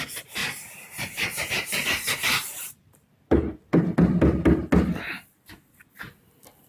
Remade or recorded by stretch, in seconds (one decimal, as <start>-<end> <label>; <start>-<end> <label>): 0.0-0.4 recorded; 0.4-3.8 remade; 3.8-6.7 recorded